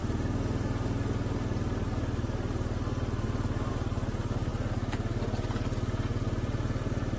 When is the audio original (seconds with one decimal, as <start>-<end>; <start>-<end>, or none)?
0.0-7.2